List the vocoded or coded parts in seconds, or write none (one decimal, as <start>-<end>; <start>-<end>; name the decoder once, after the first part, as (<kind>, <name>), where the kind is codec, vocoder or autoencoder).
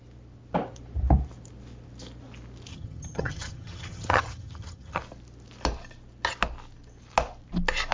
2.7-5.0 (vocoder, HiFi-GAN)